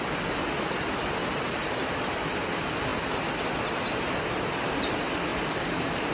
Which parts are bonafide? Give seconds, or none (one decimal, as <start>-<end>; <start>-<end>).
0.0-6.1